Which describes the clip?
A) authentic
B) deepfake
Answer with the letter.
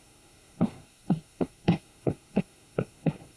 B